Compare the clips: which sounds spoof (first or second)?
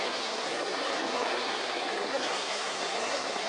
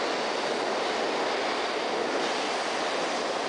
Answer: first